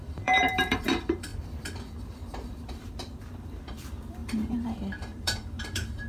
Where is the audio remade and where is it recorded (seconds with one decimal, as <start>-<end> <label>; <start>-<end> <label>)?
0.0-1.3 remade; 1.3-2.0 recorded; 2.0-6.1 remade